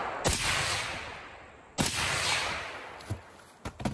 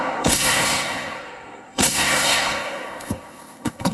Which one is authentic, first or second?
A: first